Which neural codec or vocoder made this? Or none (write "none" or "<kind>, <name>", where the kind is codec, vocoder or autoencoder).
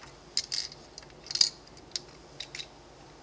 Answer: none